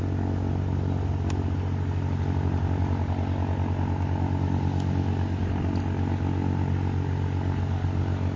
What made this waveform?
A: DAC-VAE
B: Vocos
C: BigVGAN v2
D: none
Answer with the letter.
D